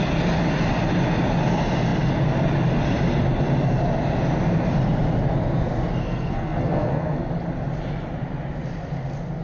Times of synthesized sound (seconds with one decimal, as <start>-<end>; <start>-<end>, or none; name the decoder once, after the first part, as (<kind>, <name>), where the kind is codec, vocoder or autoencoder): 6.0-7.3 (codec, SNAC)